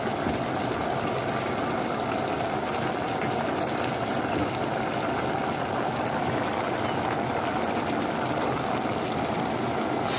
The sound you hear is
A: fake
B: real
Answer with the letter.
B